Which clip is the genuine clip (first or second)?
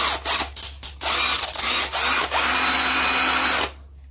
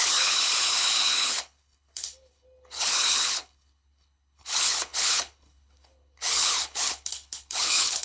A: first